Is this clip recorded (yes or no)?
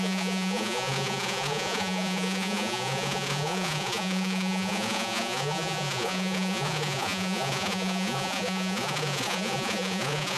no